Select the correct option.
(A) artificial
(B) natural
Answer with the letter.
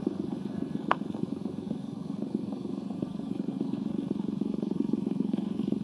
A